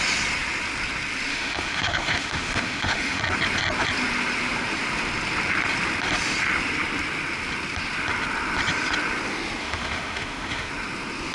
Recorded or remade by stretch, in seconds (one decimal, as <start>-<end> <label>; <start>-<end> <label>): 0.0-1.3 recorded; 1.3-3.2 remade; 3.2-9.6 recorded; 9.6-10.7 remade; 10.7-11.3 recorded